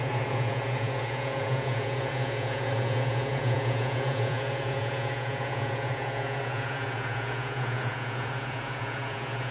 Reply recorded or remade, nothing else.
remade